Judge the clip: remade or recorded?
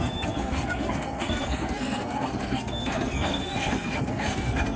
remade